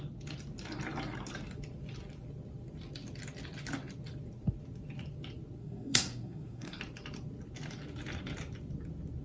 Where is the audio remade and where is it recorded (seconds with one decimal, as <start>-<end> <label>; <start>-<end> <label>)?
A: 0.0-5.6 recorded; 5.6-6.8 remade; 6.8-9.2 recorded

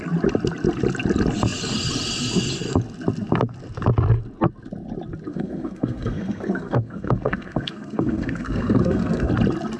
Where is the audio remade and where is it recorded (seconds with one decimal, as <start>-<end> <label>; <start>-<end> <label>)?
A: 0.0-5.3 recorded; 5.3-9.3 remade; 9.3-9.8 recorded

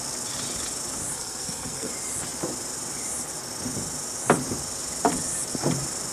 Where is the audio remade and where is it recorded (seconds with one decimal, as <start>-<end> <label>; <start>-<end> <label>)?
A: 0.0-1.1 recorded; 1.1-1.9 remade; 1.9-6.1 recorded

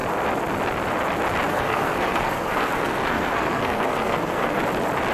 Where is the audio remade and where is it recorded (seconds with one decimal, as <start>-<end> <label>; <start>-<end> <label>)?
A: 0.0-1.5 recorded; 1.5-4.6 remade; 4.6-5.1 recorded

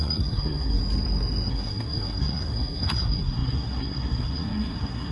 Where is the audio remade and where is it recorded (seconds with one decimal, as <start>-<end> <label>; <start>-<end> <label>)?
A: 0.0-0.8 remade; 0.8-1.5 recorded; 1.5-5.1 remade

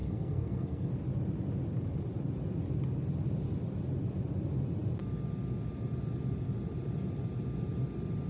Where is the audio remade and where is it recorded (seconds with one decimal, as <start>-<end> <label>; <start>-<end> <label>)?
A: 0.0-0.9 remade; 0.9-8.3 recorded